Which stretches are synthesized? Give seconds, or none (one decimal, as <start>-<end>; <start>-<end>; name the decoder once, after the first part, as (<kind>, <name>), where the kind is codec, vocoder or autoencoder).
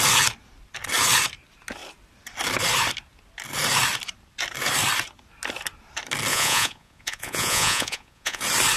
6.3-8.4 (vocoder, Vocos)